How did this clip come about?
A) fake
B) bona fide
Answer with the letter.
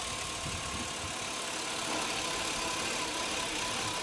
B